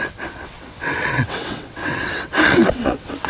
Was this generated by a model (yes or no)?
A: yes